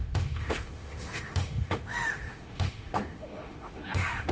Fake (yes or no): yes